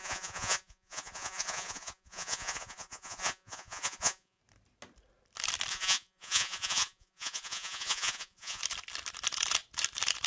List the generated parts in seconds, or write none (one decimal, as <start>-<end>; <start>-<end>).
0.0-4.4; 5.7-8.6